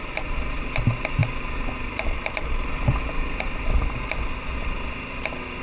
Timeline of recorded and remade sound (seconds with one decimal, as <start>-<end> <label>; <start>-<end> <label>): 0.0-5.6 recorded

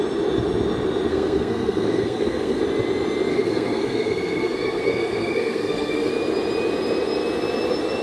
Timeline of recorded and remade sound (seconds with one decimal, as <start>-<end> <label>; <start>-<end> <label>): 0.0-1.1 recorded; 1.1-2.6 remade; 2.6-3.3 recorded; 3.3-6.1 remade; 6.1-8.0 recorded